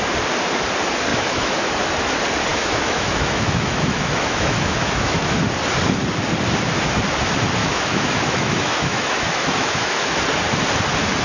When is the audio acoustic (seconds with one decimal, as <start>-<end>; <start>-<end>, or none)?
0.0-1.1; 1.7-2.5; 5.4-7.6; 10.2-11.2